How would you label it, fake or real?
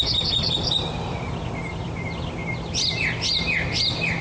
real